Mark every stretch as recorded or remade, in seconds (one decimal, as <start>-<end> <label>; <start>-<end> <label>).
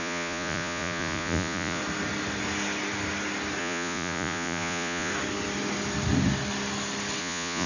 0.0-1.8 remade; 1.8-3.6 recorded; 3.6-5.1 remade; 5.1-7.2 recorded; 7.2-7.7 remade